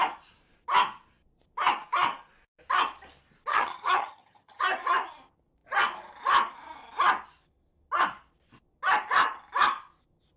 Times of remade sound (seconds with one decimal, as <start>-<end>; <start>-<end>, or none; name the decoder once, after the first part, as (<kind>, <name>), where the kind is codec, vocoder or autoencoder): 3.5-4.6 (vocoder, HiFi-GAN)